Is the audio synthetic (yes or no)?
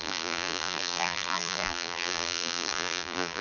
yes